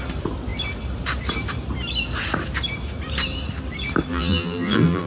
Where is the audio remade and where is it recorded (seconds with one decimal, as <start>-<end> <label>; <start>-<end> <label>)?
0.0-4.1 recorded; 4.1-5.1 remade